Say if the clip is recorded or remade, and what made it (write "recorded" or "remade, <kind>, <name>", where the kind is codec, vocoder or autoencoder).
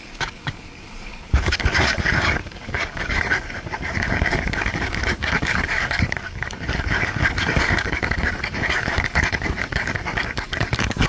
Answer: remade, codec, DAC